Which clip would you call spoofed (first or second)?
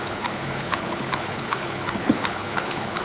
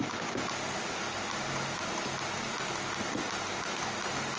first